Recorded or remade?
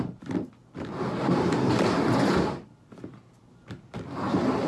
recorded